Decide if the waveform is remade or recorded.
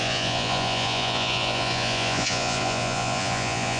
remade